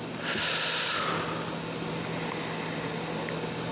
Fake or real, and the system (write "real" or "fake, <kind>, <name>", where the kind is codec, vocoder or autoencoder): real